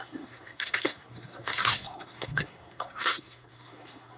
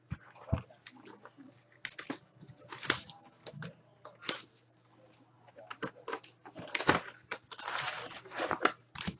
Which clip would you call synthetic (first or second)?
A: first